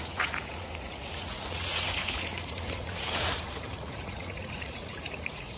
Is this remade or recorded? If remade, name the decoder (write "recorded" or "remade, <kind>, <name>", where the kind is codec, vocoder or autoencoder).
remade, vocoder, Vocos